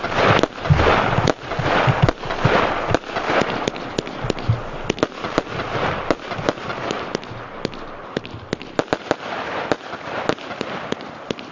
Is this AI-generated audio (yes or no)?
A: no